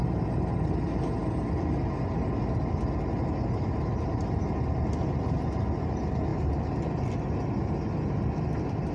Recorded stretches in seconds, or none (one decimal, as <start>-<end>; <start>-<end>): 0.0-8.9